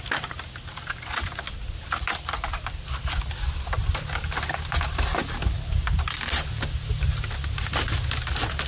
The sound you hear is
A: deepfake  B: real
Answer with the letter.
B